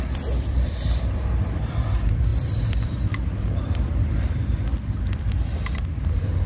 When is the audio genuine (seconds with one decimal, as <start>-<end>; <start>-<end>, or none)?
none